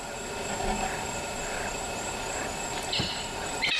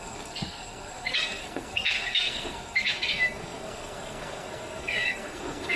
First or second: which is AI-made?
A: second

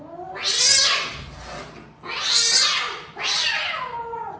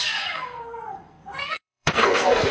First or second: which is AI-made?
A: second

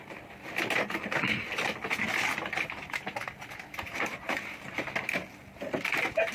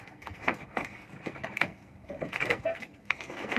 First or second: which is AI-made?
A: second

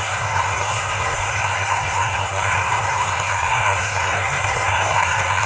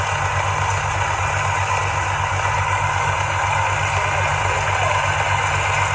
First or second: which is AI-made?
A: first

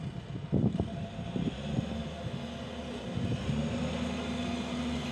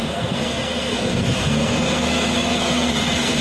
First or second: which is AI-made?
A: second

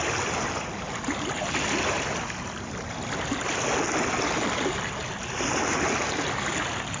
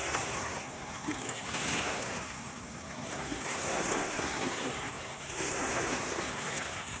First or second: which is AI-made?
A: second